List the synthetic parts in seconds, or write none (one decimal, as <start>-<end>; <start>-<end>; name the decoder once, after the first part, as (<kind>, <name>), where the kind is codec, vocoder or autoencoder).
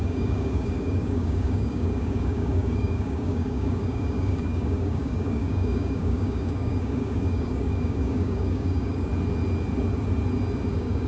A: 0.0-9.1 (codec, DAC); 10.7-11.1